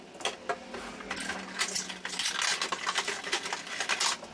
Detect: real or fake real